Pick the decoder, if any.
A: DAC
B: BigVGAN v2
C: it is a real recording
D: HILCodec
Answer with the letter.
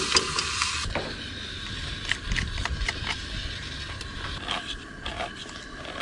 C